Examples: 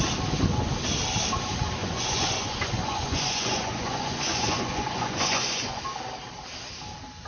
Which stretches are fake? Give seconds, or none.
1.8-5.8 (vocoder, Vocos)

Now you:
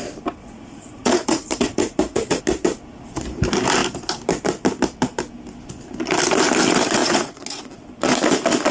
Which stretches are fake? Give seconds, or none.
0.4-2.4 (vocoder, Vocos); 7.0-7.7